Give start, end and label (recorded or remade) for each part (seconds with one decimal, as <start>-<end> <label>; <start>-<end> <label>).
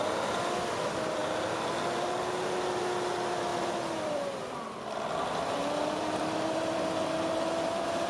0.0-3.5 recorded; 3.5-8.1 remade